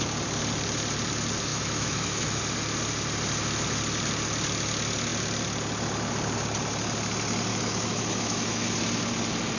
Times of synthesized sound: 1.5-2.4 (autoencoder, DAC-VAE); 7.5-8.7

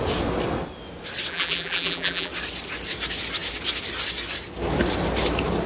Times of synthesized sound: 1.3-2.3 (vocoder, BigVGAN v2)

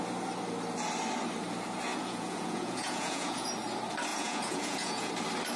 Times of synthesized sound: 1.9-3.5 (vocoder, Vocos); 4.1-5.1

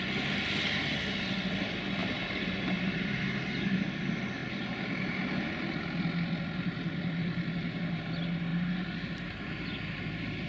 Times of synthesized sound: 2.0-3.8 (vocoder, BigVGAN v2); 8.5-9.5